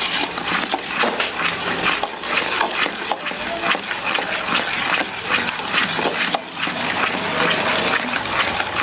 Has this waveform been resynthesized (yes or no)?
no